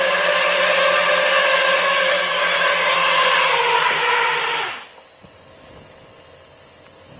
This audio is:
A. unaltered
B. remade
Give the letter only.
A